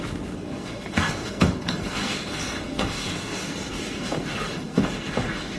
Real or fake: fake